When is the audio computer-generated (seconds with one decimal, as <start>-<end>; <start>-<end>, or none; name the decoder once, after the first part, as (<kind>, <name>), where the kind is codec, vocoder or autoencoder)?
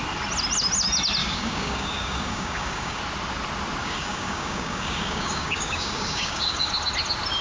1.2-3.0 (codec, DAC); 3.8-6.7